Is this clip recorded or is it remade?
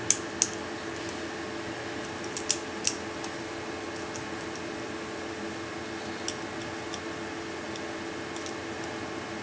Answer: recorded